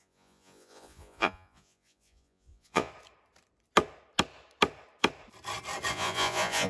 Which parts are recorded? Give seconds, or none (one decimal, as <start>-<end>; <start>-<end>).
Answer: 2.9-5.9

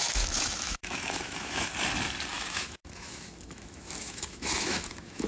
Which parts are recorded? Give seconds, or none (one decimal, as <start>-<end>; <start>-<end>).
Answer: 1.7-2.3